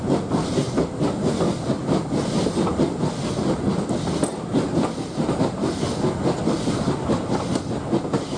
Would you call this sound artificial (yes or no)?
no